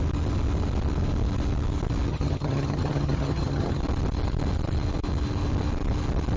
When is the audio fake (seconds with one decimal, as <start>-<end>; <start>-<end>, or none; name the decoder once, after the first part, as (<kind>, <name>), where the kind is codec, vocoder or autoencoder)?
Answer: 2.1-3.8 (vocoder, HiFi-GAN)